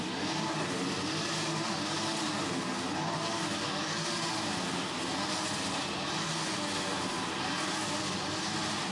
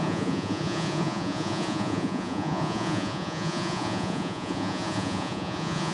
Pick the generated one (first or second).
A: second